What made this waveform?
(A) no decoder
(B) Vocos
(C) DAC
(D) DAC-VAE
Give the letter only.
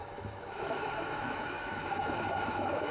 D